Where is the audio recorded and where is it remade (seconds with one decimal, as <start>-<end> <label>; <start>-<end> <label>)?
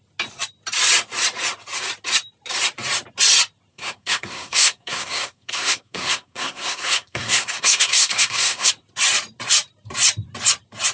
0.0-3.7 recorded; 3.7-8.7 remade; 8.7-10.9 recorded